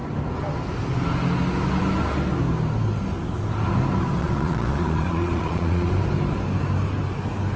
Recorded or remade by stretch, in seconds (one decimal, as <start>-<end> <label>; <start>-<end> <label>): 0.0-4.2 recorded; 4.2-5.9 remade; 5.9-7.6 recorded